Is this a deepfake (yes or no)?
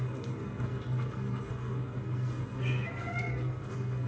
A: yes